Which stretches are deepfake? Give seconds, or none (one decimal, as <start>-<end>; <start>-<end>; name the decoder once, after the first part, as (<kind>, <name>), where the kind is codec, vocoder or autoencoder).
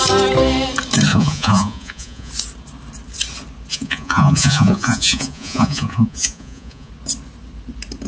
1.1-2.3 (vocoder, Vocos); 3.7-6.9